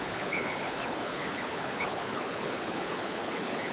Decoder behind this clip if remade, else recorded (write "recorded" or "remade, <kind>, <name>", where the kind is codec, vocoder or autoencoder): remade, codec, HILCodec